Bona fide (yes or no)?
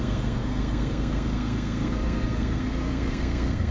no